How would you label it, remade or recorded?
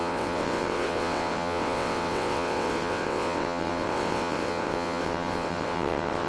remade